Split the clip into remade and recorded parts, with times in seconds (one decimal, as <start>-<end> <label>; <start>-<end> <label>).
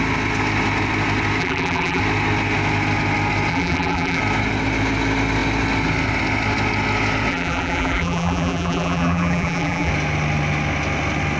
0.0-1.4 recorded; 1.4-2.0 remade; 2.0-3.5 recorded; 3.5-4.2 remade; 4.2-7.3 recorded; 7.3-9.9 remade; 9.9-11.4 recorded